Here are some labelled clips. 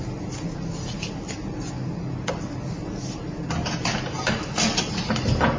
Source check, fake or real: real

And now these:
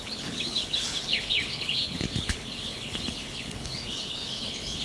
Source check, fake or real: fake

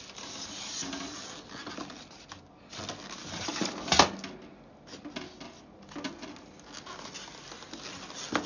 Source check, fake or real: real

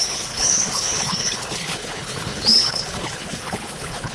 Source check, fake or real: fake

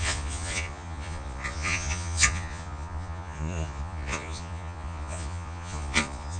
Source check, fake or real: fake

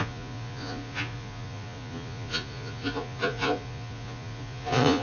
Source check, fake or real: fake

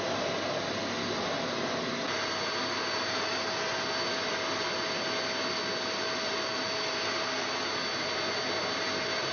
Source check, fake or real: real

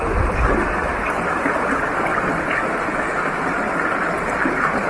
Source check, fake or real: real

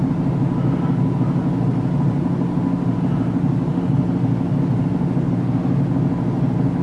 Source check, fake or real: real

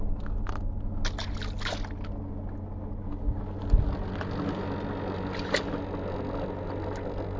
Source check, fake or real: real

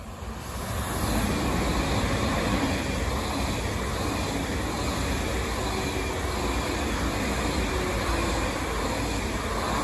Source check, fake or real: real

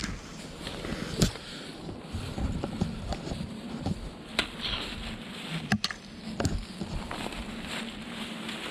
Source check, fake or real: real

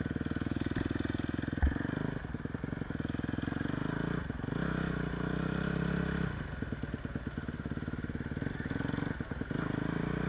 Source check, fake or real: real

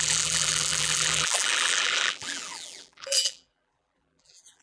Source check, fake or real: fake